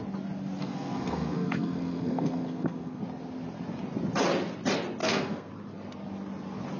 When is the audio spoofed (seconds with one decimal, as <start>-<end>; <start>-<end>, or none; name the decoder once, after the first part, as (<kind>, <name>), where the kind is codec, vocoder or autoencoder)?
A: 0.6-3.0 (codec, SNAC); 5.0-5.5